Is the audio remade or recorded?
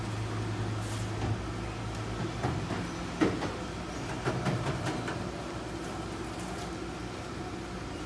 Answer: recorded